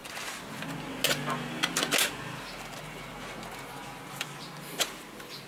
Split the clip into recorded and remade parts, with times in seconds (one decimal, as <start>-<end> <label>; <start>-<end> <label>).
0.0-3.8 recorded; 3.8-4.4 remade; 4.4-5.5 recorded